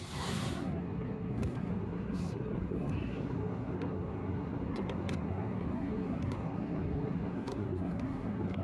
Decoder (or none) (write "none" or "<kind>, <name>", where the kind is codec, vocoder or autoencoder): codec, SNAC